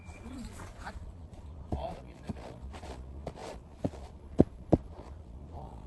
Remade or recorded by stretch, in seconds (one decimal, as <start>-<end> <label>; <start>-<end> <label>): 0.0-5.9 remade